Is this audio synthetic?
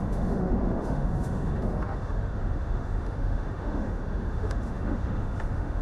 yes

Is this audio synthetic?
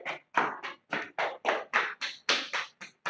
no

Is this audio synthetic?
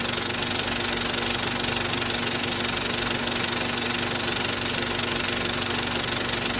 no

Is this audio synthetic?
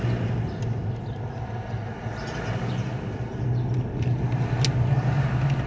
no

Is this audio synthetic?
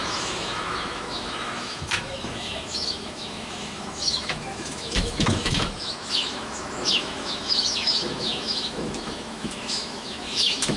yes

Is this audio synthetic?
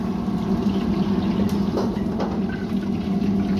no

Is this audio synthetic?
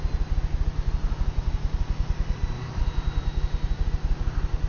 no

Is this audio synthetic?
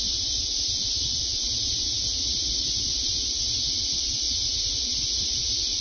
no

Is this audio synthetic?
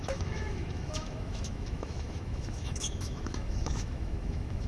yes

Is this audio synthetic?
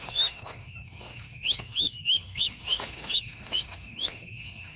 yes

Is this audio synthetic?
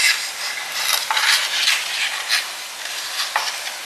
no